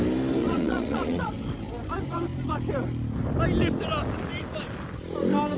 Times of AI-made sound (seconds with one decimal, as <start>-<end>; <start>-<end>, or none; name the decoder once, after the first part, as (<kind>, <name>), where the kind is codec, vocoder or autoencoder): 0.4-1.3 (vocoder, Vocos)